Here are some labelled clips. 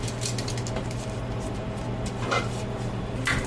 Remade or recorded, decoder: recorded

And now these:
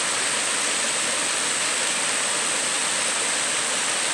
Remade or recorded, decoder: recorded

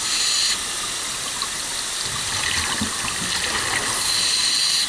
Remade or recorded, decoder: recorded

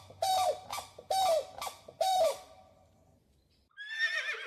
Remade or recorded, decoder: remade, vocoder, BigVGAN v2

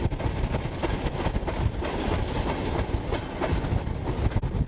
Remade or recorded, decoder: recorded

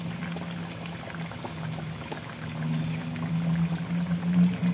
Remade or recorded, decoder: recorded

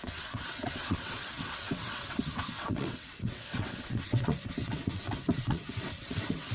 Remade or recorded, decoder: remade, vocoder, WaveNeXt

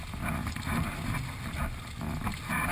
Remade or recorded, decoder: recorded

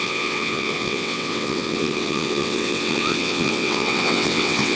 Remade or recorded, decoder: remade, vocoder, WaveNeXt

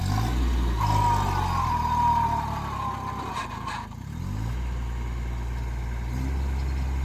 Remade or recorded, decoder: recorded